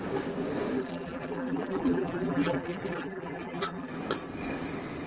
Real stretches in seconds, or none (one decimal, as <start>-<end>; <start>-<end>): 0.0-0.8; 3.9-5.1